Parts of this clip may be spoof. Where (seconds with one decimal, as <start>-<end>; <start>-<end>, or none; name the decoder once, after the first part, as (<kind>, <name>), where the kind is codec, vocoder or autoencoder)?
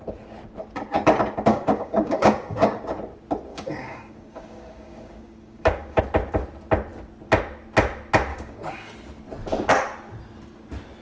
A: 1.5-2.8 (codec, DAC); 3.5-6.0; 8.3-8.9